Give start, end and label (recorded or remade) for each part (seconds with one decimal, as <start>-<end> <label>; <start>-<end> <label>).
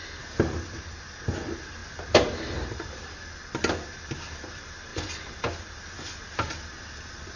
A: 0.0-1.8 recorded; 1.8-3.3 remade; 3.3-4.9 recorded; 4.9-5.9 remade; 5.9-7.4 recorded